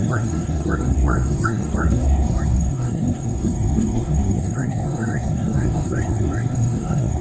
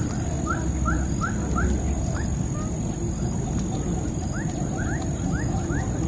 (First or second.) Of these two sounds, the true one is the second